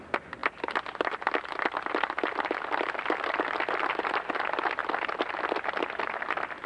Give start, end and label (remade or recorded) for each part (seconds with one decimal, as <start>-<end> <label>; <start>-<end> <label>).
0.0-6.7 recorded